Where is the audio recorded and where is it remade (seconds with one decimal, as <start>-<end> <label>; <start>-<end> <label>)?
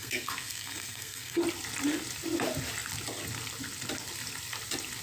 0.0-1.4 remade; 1.4-5.0 recorded